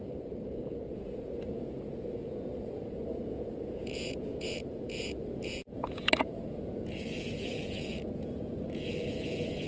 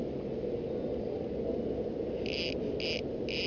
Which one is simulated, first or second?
first